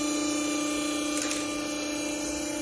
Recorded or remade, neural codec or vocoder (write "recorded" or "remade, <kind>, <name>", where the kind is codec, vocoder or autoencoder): recorded